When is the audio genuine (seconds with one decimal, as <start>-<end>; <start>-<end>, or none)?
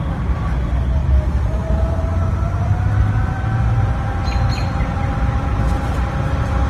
0.0-6.7